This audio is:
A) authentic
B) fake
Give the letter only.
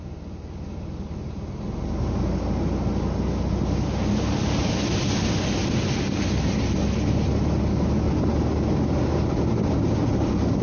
A